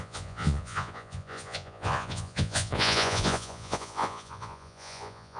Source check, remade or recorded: remade